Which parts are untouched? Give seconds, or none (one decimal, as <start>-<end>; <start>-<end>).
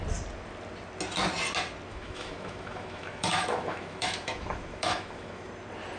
0.0-1.9; 5.5-6.0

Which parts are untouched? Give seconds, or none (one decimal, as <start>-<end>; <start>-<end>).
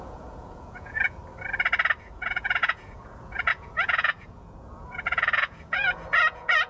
1.2-2.0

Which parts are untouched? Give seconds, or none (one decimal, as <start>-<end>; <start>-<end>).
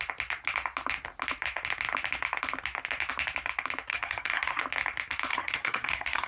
0.0-3.9; 4.6-5.3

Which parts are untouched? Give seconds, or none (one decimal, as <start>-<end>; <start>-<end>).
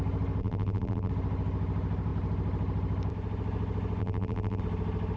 0.0-0.4; 1.1-4.0; 4.6-5.2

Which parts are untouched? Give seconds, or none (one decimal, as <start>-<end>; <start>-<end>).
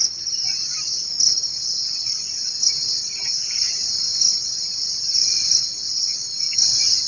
0.0-7.1